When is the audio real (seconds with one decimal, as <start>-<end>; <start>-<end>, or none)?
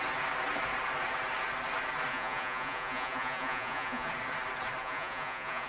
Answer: 0.0-2.1; 4.1-4.8